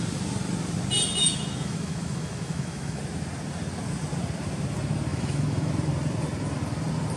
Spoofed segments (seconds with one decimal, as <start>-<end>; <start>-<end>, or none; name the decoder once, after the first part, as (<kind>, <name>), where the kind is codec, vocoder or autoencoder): 1.2-3.0 (autoencoder, DAC-VAE); 5.1-5.7